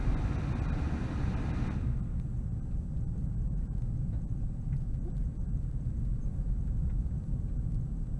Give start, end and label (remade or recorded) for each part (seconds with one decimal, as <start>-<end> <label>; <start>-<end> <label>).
0.0-3.2 recorded; 3.2-5.1 remade; 5.1-8.2 recorded

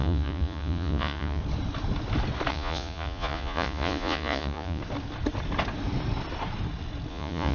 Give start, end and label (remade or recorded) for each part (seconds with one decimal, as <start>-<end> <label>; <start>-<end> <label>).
0.0-1.4 remade; 1.4-2.5 recorded; 2.5-4.8 remade; 4.8-7.1 recorded; 7.1-7.5 remade

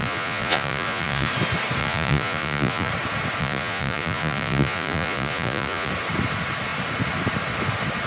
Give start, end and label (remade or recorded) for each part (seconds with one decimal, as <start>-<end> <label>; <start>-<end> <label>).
0.0-1.3 remade; 1.3-1.8 recorded; 1.8-2.9 remade; 2.9-3.4 recorded; 3.4-5.9 remade; 5.9-8.1 recorded

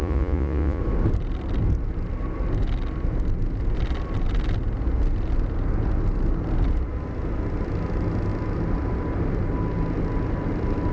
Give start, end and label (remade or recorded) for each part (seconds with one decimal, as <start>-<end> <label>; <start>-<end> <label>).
0.0-0.8 remade; 0.8-10.9 recorded

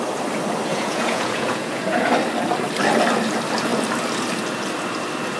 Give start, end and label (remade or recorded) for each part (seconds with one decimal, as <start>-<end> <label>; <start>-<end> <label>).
0.0-0.7 recorded; 0.7-2.1 remade; 2.1-5.4 recorded

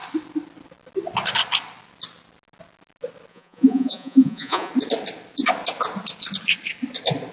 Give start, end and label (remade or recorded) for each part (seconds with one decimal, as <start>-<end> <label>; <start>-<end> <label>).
0.0-3.3 recorded; 3.3-4.7 remade; 4.7-7.3 recorded

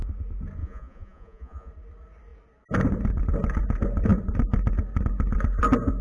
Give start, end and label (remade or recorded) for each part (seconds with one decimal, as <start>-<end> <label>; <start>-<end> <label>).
0.0-0.6 recorded; 0.6-1.7 remade; 1.7-6.0 recorded

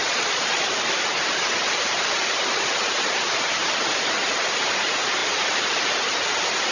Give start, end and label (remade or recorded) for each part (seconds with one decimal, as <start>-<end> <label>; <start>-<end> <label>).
0.0-0.7 remade; 0.7-6.7 recorded